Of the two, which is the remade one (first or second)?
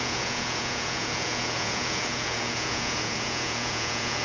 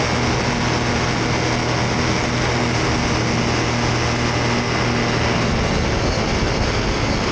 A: first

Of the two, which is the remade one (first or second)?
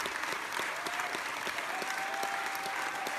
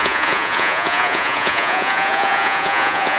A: second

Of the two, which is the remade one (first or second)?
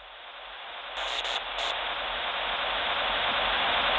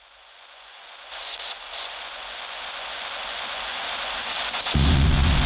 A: second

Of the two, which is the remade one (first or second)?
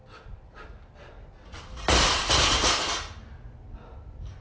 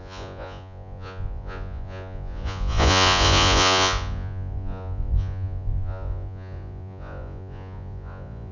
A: second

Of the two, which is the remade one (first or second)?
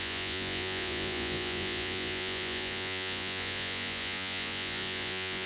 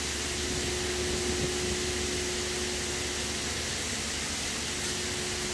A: first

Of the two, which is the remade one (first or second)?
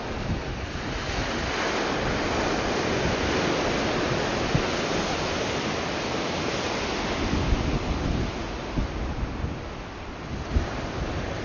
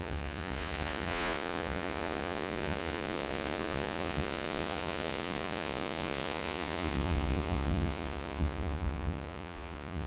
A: second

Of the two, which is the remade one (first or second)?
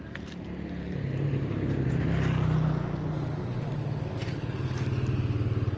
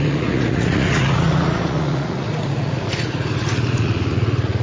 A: second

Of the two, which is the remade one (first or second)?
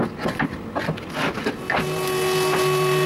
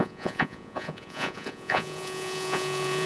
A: second